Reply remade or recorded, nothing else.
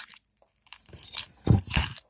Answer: remade